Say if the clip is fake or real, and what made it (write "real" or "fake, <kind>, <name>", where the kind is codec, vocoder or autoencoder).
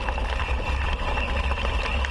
real